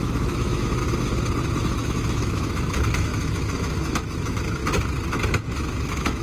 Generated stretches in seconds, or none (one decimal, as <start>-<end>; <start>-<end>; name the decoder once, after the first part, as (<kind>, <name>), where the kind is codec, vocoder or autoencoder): 0.0-0.8 (autoencoder, DAC-VAE); 1.6-4.6; 5.4-6.2